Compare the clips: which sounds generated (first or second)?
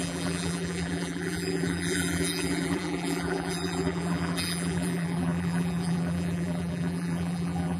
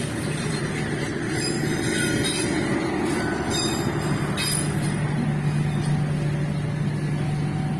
first